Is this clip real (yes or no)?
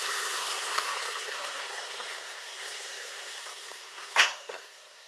no